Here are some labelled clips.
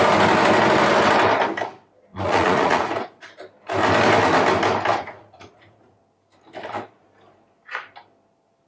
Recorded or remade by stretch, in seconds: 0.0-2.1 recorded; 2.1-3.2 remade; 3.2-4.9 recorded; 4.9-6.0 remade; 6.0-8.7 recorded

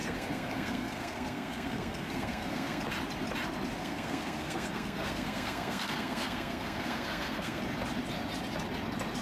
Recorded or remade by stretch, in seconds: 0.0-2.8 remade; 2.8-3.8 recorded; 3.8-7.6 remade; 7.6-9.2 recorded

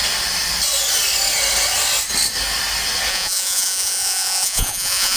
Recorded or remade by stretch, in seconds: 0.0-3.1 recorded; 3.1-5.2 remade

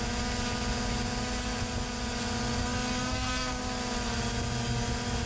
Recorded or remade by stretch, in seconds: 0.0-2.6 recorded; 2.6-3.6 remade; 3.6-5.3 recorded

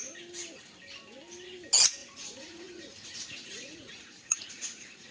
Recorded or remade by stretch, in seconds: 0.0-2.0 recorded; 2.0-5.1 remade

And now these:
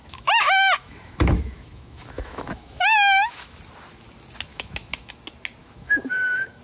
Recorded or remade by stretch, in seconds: 0.0-3.6 remade; 3.6-4.5 recorded; 4.5-5.1 remade; 5.1-5.6 recorded; 5.6-6.6 remade

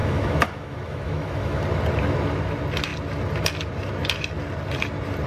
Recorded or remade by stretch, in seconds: 0.0-1.6 remade; 1.6-5.3 recorded